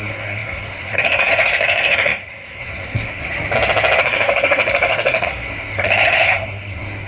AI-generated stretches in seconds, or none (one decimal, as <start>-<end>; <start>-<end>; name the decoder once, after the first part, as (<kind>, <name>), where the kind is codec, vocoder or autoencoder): 0.0-3.2 (codec, SNAC); 4.0-7.1